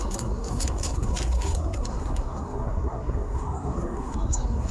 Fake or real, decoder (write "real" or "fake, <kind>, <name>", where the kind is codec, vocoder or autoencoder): fake, codec, SNAC